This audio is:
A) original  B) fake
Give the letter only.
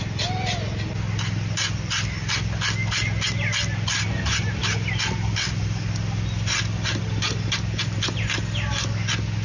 A